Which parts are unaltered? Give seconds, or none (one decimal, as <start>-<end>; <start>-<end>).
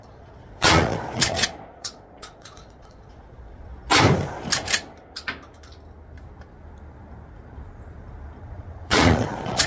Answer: 3.7-8.4